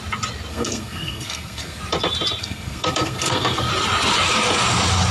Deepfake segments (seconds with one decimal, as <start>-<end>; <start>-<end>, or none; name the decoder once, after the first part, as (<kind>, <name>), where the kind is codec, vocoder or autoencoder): 0.5-1.8 (codec, SNAC); 2.4-3.7